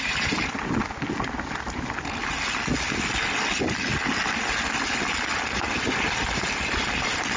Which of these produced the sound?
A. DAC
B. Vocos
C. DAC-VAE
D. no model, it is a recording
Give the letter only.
D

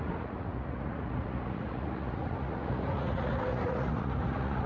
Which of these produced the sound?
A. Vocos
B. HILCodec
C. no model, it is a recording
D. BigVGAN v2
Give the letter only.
A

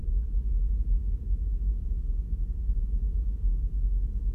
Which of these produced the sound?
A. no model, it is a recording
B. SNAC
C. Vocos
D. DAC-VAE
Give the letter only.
A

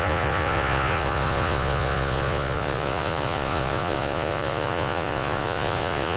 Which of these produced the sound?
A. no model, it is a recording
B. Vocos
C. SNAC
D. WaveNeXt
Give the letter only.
B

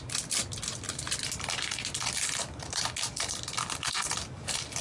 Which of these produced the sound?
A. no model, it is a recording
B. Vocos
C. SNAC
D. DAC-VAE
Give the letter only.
A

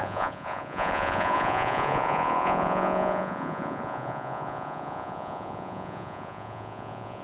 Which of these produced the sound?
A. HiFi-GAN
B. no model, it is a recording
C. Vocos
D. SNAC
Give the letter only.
C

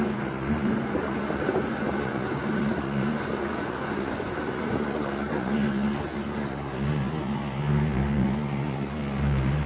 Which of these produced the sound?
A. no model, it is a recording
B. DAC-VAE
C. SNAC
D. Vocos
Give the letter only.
D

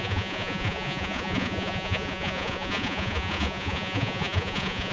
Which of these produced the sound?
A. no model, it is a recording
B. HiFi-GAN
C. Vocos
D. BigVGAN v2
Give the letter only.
C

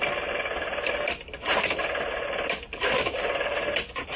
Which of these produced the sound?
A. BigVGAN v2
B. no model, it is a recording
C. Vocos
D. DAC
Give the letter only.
B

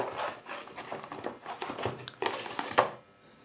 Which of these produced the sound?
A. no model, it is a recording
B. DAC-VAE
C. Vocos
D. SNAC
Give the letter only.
A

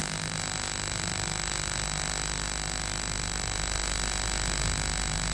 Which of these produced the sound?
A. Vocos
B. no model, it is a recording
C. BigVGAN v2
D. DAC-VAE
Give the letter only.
B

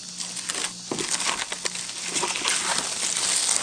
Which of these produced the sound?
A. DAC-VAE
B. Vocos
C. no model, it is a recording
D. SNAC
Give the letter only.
C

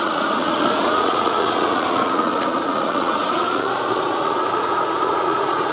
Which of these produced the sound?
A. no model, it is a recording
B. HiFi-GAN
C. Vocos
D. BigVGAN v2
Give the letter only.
C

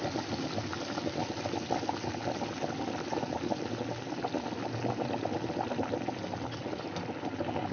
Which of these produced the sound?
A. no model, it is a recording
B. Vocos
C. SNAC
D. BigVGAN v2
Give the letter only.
A